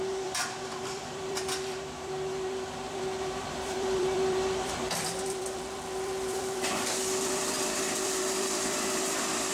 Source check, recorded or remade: remade